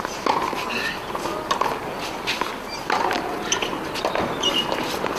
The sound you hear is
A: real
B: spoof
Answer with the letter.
A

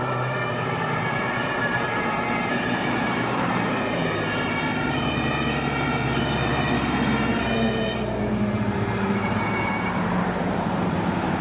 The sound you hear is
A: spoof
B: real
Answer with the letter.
A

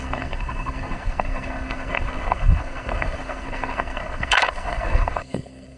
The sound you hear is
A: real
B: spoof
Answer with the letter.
B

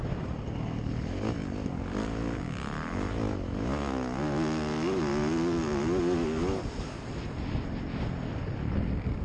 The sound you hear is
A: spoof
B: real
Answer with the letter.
B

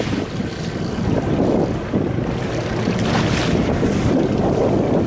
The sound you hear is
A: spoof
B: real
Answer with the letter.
B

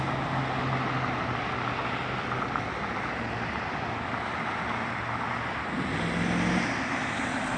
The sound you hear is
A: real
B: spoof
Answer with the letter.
A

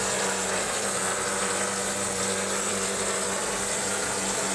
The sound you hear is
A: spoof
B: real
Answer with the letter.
B